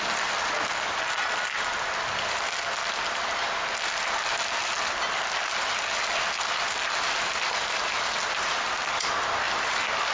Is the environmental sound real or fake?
real